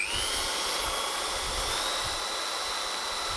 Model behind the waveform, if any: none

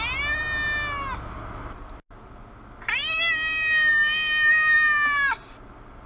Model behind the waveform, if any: none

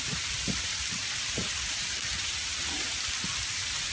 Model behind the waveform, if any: none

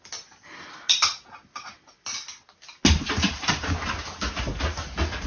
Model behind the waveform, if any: none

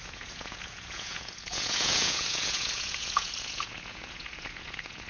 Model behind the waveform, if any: vocoder, Vocos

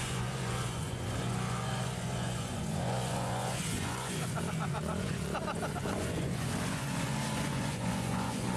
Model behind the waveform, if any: vocoder, Vocos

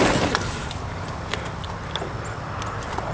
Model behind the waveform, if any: none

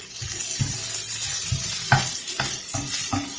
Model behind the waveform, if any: none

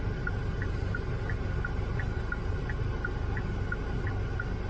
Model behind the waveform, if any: none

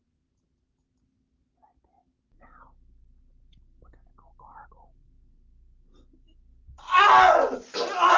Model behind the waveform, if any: none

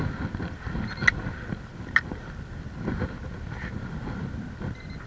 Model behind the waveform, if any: none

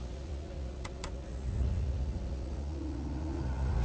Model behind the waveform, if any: vocoder, Vocos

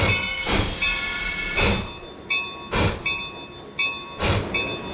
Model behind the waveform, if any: none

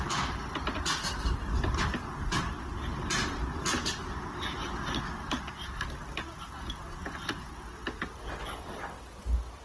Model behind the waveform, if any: none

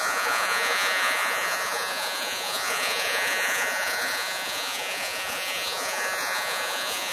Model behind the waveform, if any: vocoder, Vocos